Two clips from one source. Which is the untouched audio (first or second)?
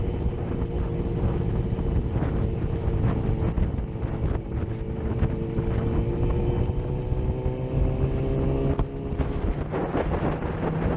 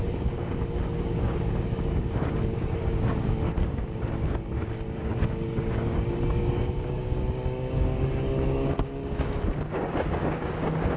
first